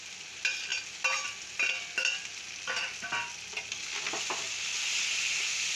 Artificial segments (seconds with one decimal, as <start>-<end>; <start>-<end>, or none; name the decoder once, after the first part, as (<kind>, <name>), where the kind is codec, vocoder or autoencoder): none